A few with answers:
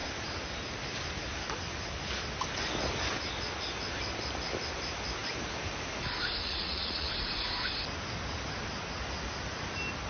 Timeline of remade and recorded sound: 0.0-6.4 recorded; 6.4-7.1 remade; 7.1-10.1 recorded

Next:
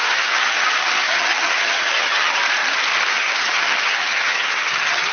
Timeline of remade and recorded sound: 0.0-2.4 remade; 2.4-3.1 recorded; 3.1-5.1 remade

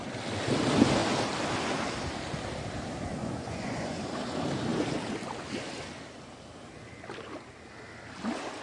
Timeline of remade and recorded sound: 0.0-3.2 recorded; 3.2-4.0 remade; 4.0-8.6 recorded

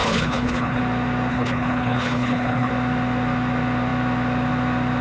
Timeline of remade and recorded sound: 0.0-0.8 remade; 0.8-1.3 recorded; 1.3-2.7 remade; 2.7-5.0 recorded